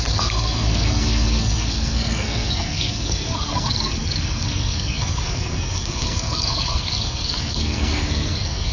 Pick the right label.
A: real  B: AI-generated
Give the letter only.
B